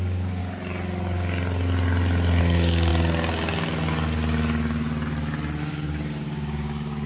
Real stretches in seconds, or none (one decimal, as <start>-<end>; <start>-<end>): 0.4-2.4; 2.9-5.6